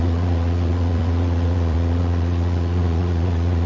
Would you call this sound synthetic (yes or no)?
yes